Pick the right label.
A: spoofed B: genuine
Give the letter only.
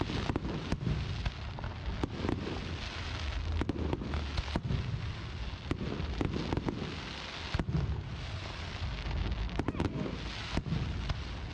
B